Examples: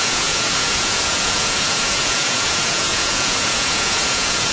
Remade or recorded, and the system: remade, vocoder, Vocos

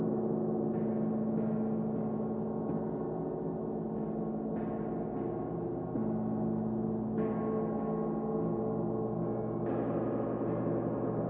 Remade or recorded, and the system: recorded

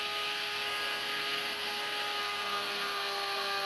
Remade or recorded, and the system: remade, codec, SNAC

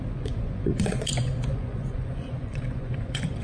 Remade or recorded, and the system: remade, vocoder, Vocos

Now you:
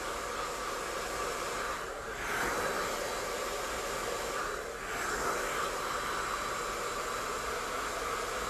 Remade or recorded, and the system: recorded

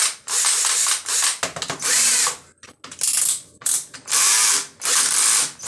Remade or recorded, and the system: recorded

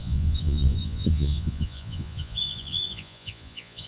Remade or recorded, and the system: remade, vocoder, Vocos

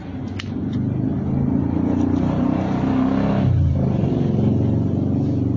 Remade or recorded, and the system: recorded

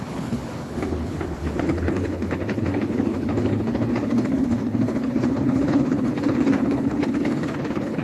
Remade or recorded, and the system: remade, codec, HILCodec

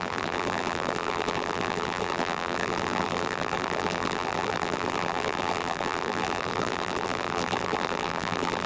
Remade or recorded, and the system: remade, vocoder, BigVGAN v2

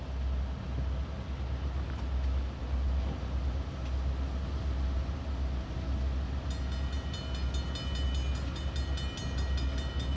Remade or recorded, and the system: recorded